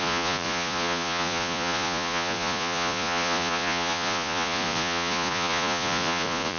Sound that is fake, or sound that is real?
fake